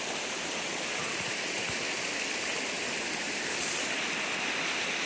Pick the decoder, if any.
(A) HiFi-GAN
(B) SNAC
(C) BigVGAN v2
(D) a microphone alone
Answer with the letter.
D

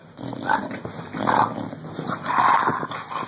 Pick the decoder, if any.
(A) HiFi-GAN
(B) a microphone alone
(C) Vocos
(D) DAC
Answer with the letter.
B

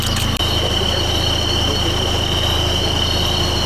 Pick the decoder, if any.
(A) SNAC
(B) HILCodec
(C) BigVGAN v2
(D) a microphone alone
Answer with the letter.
D